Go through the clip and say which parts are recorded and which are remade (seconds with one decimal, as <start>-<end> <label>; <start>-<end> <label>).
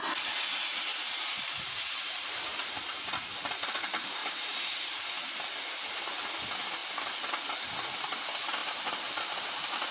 0.0-0.9 recorded; 0.9-2.7 remade; 2.7-4.2 recorded; 4.2-5.0 remade; 5.0-8.6 recorded; 8.6-9.9 remade